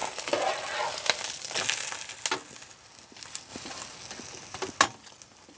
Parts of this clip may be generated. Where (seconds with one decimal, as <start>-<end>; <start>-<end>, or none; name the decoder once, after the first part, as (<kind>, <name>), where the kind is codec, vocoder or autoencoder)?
none